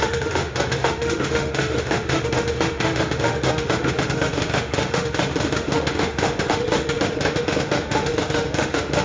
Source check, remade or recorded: remade